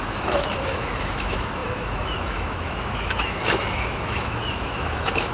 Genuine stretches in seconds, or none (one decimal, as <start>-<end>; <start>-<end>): none